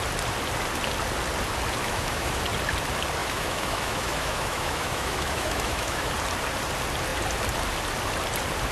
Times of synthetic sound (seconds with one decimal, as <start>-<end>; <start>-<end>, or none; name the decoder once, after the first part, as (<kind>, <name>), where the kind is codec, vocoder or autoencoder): 1.8-2.4 (autoencoder, DAC-VAE); 3.2-6.1